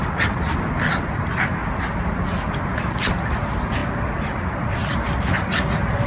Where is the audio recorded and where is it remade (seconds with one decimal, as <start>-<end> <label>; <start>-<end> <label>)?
0.0-6.1 recorded